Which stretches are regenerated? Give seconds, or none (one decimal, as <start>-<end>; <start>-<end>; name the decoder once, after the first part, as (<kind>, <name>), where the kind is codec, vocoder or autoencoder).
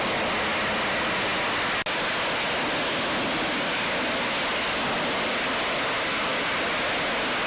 6.3-6.9 (vocoder, BigVGAN v2)